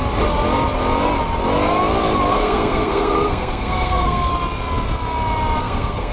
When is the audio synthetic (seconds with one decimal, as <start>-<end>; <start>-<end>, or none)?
2.3-4.3; 5.6-6.1